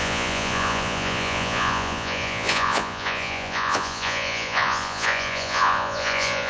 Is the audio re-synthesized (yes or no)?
yes